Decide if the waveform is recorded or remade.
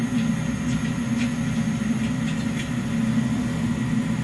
recorded